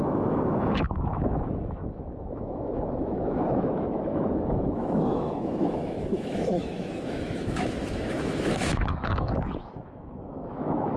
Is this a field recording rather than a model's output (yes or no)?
no